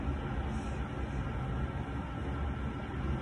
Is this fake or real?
real